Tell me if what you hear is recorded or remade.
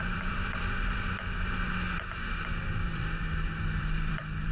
remade